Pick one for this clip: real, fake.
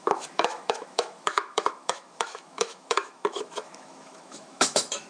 fake